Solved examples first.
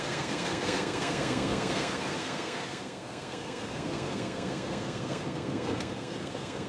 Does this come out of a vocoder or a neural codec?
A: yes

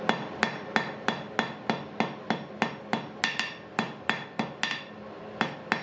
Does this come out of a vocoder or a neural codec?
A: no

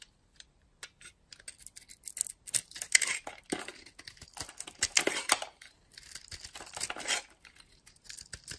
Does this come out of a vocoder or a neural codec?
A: no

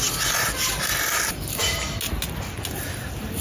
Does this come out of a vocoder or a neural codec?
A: no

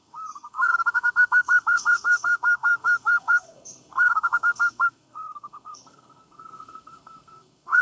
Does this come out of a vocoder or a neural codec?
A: yes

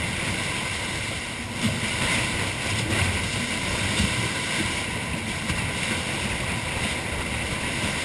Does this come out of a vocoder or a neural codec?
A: no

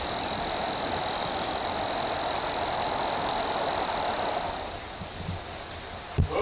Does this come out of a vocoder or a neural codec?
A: no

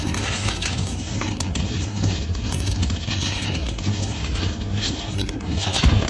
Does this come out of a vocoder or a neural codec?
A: yes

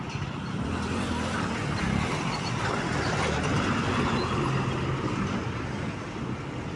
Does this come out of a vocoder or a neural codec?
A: no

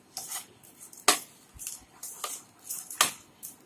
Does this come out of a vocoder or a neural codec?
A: no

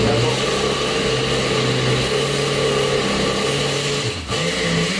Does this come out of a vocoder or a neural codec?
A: no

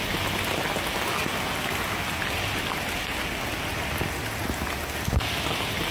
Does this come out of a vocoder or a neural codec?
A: no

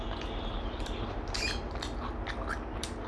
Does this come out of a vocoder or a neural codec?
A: no